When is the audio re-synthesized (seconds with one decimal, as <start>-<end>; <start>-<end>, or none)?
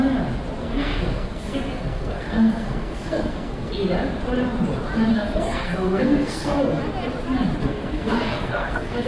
0.6-3.7; 5.1-6.8; 7.6-9.1